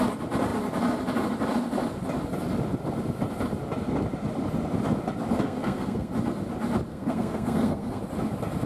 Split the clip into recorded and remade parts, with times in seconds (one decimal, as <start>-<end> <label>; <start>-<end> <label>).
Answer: 0.0-5.4 recorded; 5.4-6.1 remade; 6.1-6.9 recorded; 6.9-8.0 remade; 8.0-8.7 recorded